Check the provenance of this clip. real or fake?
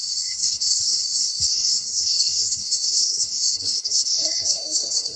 fake